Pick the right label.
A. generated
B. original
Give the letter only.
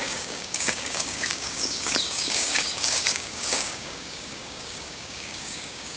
A